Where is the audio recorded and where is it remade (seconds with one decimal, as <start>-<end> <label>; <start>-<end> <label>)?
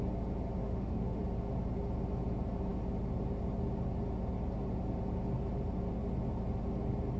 0.0-0.6 recorded; 0.6-1.2 remade; 1.2-7.2 recorded